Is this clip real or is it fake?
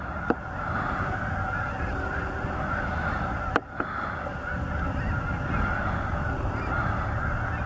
real